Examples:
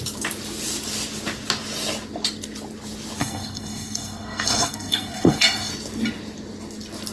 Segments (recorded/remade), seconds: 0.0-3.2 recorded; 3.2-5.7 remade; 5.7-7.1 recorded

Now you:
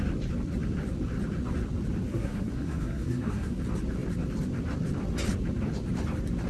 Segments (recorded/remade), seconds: 0.0-2.1 recorded; 2.1-3.6 remade; 3.6-6.5 recorded